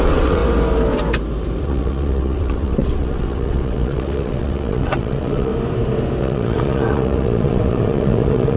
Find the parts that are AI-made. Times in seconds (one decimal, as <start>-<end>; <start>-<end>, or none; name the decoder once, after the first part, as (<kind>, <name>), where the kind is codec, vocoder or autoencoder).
0.0-0.4 (vocoder, WaveNeXt); 1.6-5.5; 6.2-8.6